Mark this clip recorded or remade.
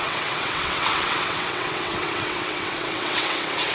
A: remade